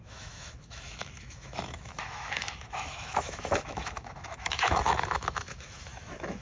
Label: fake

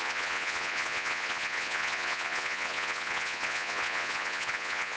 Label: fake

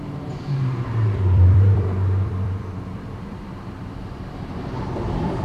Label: fake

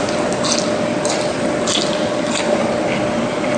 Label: real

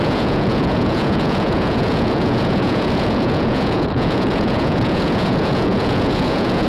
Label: fake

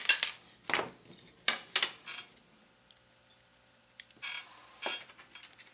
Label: real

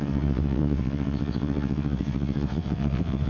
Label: fake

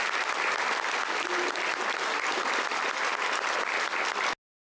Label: real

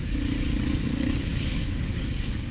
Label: fake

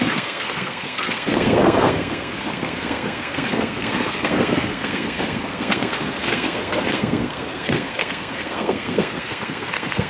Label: fake